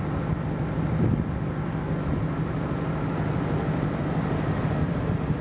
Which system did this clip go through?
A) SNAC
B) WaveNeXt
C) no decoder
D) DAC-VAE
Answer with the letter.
C